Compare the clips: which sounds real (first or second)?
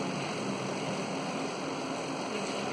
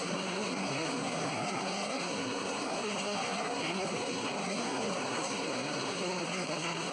first